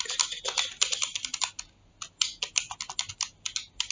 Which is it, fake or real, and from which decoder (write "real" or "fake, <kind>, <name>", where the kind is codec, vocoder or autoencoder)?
real